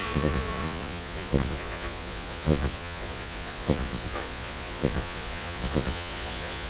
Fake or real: fake